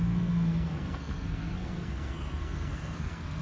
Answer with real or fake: fake